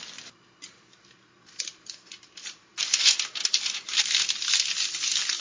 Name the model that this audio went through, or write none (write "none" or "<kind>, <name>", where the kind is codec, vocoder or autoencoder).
none